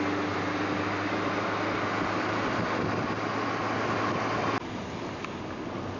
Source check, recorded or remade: recorded